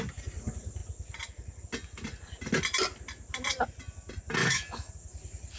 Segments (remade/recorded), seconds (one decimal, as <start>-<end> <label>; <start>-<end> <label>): 0.0-4.4 recorded; 4.4-4.9 remade; 4.9-5.6 recorded